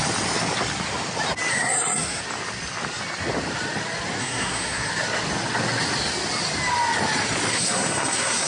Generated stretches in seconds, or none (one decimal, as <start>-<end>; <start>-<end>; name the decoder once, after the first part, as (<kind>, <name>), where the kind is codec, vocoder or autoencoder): 1.5-2.2 (codec, SNAC); 4.2-4.9; 7.5-8.5